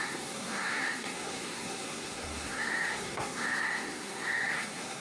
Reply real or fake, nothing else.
fake